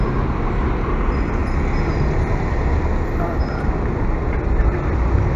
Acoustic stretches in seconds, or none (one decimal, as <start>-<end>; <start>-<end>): 0.0-5.4